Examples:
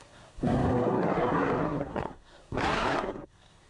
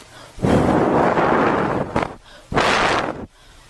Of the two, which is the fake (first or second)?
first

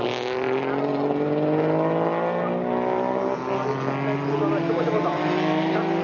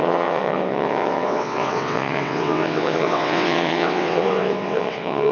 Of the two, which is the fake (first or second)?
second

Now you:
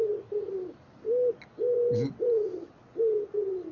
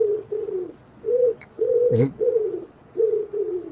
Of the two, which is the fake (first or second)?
second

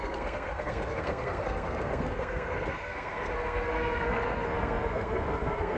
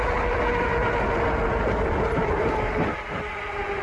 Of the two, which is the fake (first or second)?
first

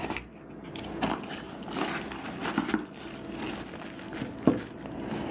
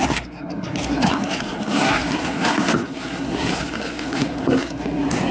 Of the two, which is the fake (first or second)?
second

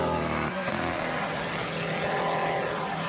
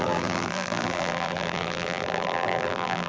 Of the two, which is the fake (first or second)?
second